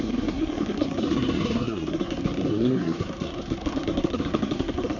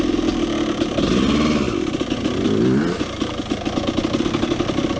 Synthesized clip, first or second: first